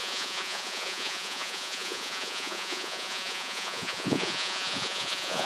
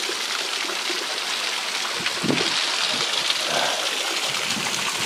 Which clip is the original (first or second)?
second